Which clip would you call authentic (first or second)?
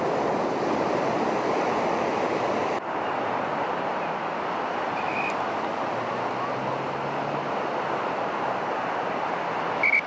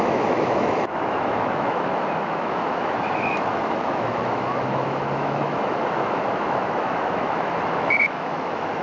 first